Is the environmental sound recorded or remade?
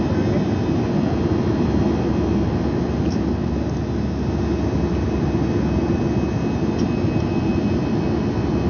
recorded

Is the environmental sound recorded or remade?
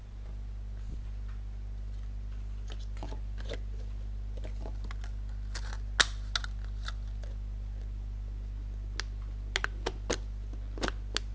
recorded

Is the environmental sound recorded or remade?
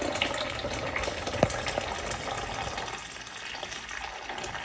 recorded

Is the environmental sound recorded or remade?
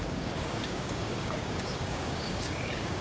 remade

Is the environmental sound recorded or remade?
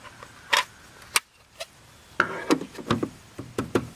recorded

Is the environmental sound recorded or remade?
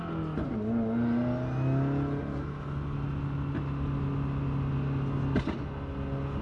recorded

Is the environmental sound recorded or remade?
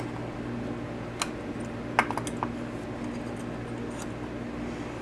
recorded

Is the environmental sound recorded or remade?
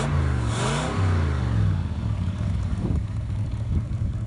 remade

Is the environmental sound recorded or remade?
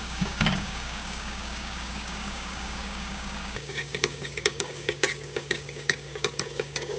remade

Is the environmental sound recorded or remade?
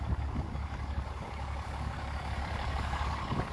remade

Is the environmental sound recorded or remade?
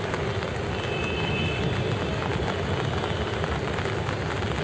recorded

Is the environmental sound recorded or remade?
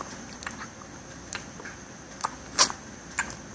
recorded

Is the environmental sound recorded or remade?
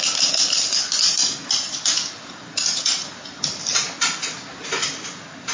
recorded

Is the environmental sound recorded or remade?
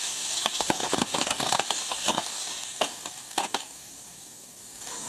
remade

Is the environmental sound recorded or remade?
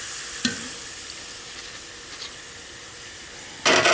recorded